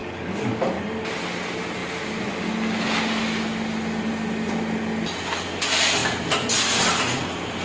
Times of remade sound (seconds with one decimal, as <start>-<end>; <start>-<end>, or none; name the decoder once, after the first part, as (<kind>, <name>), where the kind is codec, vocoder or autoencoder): 0.0-0.8 (codec, DAC)